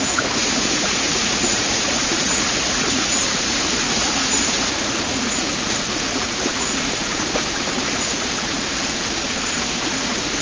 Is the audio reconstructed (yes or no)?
yes